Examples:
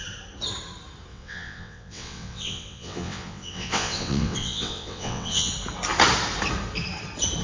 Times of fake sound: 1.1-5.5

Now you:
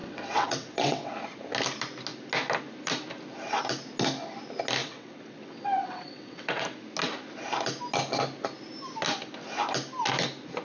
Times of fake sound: 0.0-1.1; 4.8-6.6

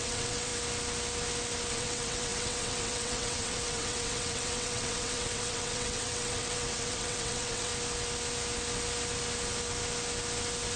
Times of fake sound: 0.0-0.5; 1.7-7.7

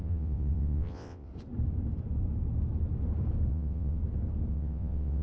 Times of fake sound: 0.0-1.3; 3.5-4.0; 4.5-5.2

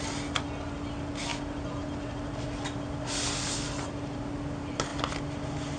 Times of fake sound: none

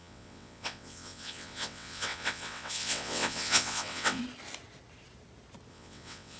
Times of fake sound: 0.0-4.2; 5.7-6.4

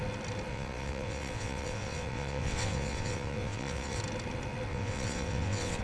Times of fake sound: 0.5-4.0; 4.7-5.8

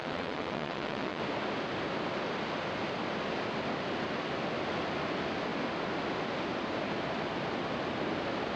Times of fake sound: 0.0-1.2